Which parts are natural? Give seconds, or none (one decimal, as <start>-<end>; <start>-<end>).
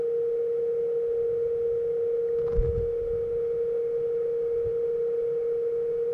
0.0-6.1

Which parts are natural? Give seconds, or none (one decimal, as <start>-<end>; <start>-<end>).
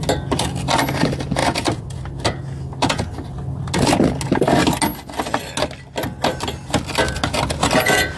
0.0-8.2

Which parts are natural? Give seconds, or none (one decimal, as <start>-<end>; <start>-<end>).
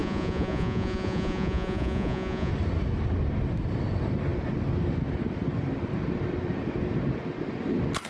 2.5-8.1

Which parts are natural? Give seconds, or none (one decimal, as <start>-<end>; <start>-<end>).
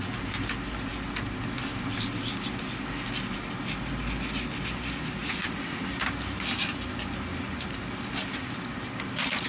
0.0-5.2; 5.8-9.5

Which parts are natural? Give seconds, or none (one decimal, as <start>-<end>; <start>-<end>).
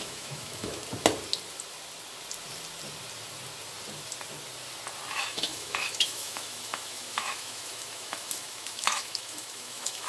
0.8-5.1